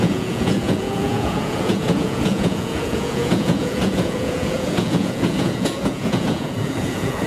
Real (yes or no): no